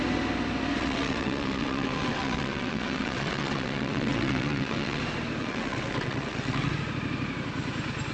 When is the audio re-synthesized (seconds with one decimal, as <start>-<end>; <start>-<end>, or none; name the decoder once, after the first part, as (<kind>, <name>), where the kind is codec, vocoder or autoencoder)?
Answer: 0.8-5.0 (vocoder, WaveNeXt); 5.4-6.7